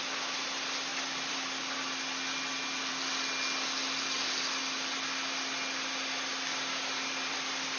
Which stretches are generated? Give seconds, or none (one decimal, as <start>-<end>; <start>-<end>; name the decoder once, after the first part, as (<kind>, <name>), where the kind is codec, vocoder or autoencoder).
none